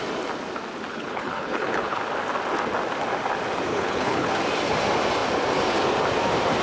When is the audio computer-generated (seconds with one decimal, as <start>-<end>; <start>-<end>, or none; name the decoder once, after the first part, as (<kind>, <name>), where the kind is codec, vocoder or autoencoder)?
0.9-2.0 (codec, HILCodec); 3.7-4.3